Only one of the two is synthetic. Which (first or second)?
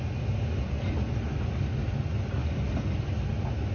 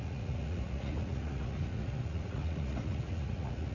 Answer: second